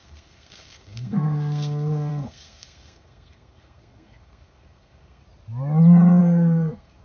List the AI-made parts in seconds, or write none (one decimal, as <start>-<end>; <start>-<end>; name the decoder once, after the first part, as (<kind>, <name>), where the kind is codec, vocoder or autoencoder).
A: 0.0-5.2 (codec, SNAC); 6.2-7.0